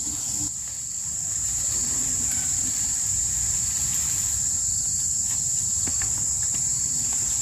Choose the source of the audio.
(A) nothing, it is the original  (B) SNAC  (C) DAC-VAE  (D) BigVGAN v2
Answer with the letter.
D